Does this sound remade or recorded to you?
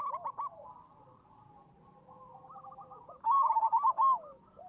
recorded